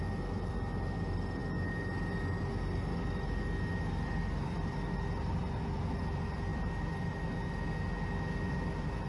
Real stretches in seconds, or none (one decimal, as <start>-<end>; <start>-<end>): 0.0-9.1